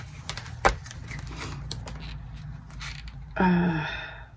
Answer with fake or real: real